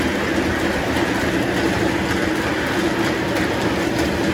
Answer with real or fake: real